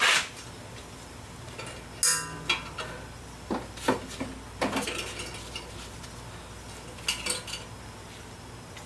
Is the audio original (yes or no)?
yes